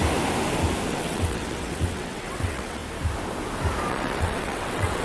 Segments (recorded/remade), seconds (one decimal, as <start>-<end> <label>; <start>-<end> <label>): 0.0-0.9 recorded; 0.9-2.8 remade; 2.8-3.9 recorded; 3.9-5.0 remade